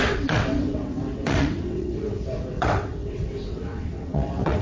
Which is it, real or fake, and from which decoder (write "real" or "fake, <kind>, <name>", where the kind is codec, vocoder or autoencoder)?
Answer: fake, vocoder, WaveNeXt